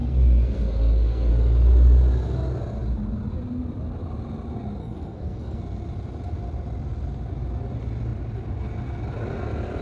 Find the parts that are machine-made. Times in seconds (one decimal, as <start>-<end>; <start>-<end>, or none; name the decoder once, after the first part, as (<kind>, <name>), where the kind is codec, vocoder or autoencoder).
0.0-1.3 (codec, SNAC); 4.8-5.6

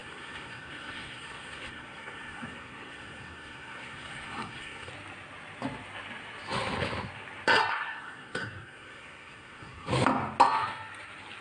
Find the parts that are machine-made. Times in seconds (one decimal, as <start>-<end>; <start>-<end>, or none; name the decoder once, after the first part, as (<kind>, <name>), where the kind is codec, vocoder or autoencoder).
0.0-4.9 (codec, SNAC); 7.7-9.9

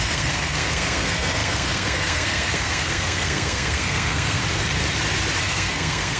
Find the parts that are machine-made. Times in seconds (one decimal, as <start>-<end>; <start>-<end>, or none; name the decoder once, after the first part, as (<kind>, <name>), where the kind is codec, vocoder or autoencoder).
0.0-4.4 (codec, SNAC); 5.4-6.2

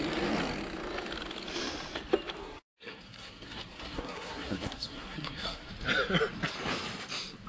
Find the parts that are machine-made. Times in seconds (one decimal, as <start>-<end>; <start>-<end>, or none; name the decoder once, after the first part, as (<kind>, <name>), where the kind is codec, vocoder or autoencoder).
2.4-5.7 (codec, SNAC)

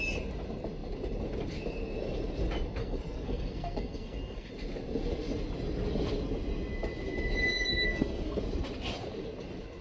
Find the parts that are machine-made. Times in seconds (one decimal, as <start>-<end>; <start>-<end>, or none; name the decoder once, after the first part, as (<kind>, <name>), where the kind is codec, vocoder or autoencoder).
2.8-4.5 (codec, SNAC); 7.5-8.4

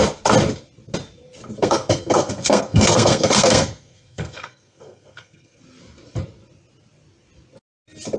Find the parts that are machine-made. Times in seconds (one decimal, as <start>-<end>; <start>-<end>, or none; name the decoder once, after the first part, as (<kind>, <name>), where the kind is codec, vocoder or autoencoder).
1.6-5.6 (codec, SNAC)

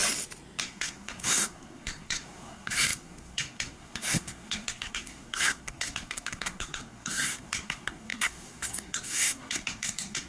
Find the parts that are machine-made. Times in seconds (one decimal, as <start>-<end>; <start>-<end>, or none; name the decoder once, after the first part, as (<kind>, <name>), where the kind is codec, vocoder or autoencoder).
0.6-10.3 (codec, SNAC)